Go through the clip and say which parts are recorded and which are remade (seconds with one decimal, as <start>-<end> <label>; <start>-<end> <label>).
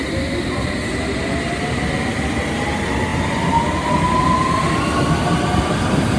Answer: 0.0-6.2 recorded